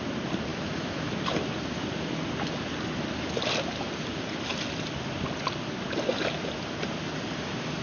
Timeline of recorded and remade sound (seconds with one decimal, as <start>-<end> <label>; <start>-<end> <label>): 0.0-0.5 recorded; 0.5-1.1 remade; 1.1-7.8 recorded